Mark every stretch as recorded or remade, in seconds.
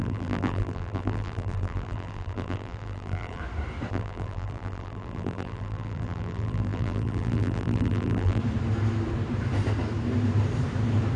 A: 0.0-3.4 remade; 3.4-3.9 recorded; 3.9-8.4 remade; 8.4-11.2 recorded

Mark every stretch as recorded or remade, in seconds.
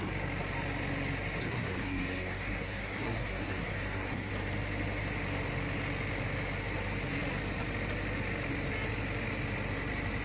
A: 0.0-1.5 recorded; 1.5-4.3 remade; 4.3-10.2 recorded